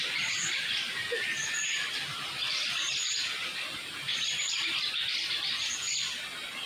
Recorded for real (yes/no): no